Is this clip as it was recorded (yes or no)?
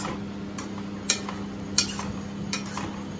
yes